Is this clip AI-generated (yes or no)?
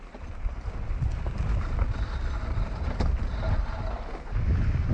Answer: no